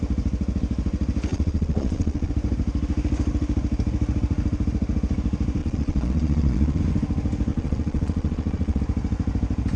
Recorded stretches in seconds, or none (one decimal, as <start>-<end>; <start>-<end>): 0.0-1.3; 2.3-5.6; 6.8-7.5; 8.8-9.8